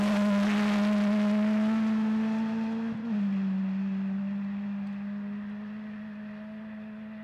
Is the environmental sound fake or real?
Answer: real